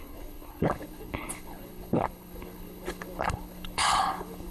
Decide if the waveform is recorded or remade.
remade